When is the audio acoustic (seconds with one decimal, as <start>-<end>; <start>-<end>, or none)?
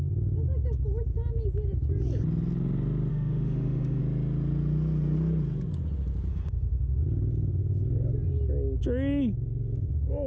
0.0-3.1; 4.0-6.3; 7.0-10.3